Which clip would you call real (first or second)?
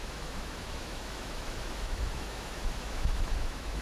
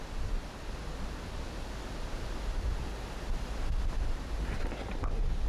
second